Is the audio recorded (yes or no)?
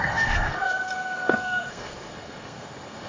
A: no